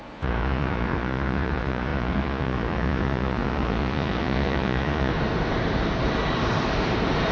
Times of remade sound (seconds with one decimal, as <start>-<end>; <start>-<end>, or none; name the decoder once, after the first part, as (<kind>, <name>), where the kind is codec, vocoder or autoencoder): 0.0-5.1 (vocoder, Vocos)